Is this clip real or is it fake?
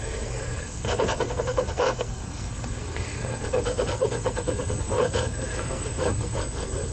fake